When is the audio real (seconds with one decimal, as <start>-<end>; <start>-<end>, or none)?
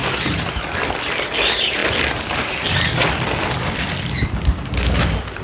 0.0-1.0